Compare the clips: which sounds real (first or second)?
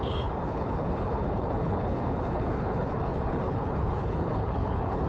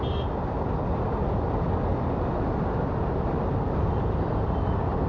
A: second